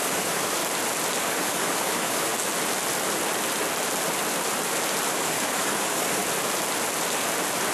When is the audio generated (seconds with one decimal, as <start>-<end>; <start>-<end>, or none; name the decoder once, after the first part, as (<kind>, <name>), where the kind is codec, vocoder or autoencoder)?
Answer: 0.0-0.6 (codec, DAC); 1.2-2.3; 5.1-6.2